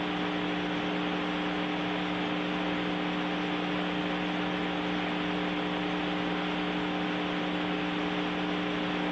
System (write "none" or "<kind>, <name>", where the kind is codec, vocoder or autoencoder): none